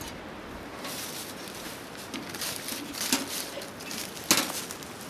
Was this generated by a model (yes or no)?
no